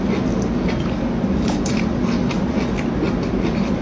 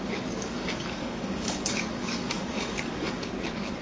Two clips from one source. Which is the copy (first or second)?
second